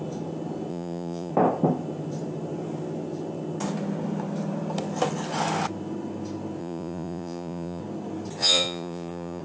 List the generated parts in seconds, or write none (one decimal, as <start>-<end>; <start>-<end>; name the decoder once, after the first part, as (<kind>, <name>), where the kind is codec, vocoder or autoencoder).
0.7-1.3 (vocoder, Vocos); 6.6-7.8; 8.4-9.4